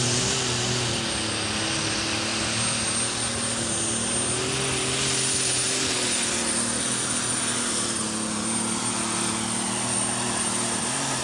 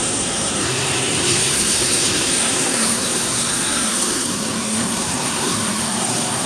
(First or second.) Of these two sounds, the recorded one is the first